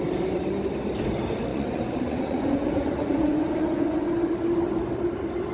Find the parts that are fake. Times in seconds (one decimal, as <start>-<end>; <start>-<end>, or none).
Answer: 1.5-4.3